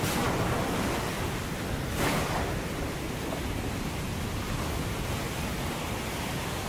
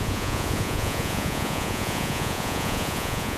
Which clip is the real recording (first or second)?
first